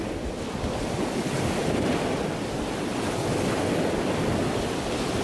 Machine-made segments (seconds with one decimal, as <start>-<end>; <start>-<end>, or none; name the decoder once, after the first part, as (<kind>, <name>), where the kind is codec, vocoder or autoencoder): 1.6-2.5 (vocoder, BigVGAN v2)